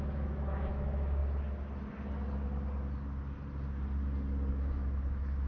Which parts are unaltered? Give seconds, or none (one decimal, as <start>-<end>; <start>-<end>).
1.2-4.5